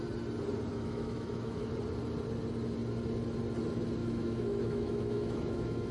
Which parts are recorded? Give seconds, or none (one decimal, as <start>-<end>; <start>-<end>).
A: 0.0-0.7; 1.7-4.0